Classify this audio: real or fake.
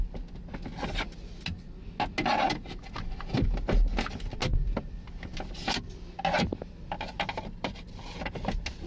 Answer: real